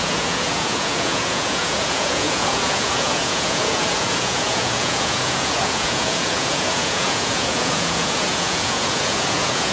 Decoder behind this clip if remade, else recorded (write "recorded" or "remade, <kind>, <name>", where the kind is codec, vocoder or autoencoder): remade, vocoder, Vocos